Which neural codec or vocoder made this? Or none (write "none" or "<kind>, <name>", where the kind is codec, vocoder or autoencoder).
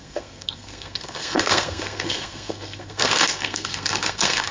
codec, SNAC